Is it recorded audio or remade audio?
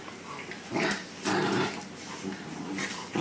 recorded